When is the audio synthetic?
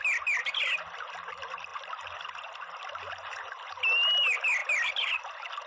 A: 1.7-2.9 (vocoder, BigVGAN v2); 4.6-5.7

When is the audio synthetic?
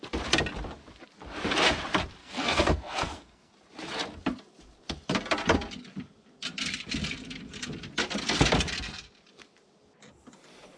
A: 2.2-3.5 (codec, SNAC)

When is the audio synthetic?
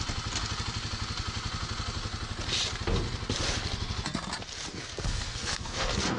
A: 4.7-6.2 (codec, SNAC)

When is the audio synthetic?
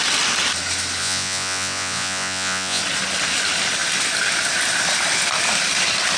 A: 1.0-2.8 (vocoder, Vocos)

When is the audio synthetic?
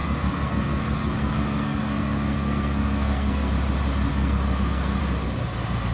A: 0.0-3.5 (codec, SNAC); 4.1-5.0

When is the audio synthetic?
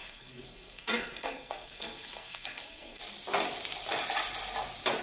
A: 0.0-3.0 (codec, SNAC)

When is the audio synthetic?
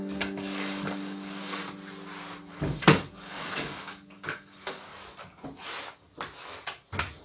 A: 0.0-1.6 (codec, DAC); 2.5-4.9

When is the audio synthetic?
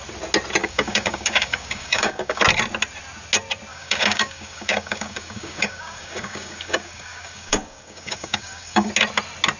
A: 0.6-2.4 (codec, DAC); 3.7-8.9